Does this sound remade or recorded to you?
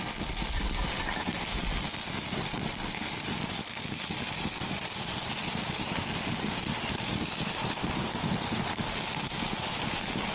recorded